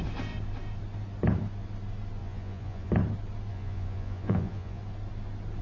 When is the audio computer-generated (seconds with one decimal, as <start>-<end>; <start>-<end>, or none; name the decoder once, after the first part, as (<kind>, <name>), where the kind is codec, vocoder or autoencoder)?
2.2-2.9 (vocoder, Vocos); 3.5-4.8